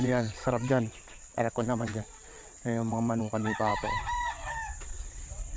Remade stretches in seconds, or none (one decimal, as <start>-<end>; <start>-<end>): 0.0-3.7; 4.3-5.6